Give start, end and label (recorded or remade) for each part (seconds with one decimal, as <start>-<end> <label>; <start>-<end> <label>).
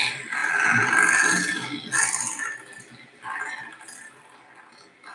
0.0-5.1 recorded